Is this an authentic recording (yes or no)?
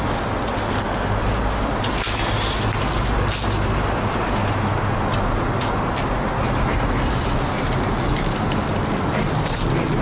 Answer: yes